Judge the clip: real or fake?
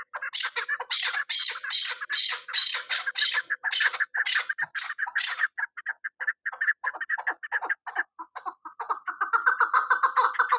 real